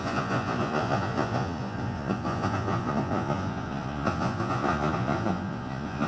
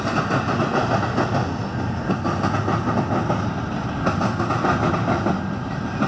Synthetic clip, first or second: first